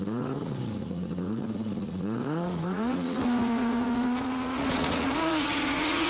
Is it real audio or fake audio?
fake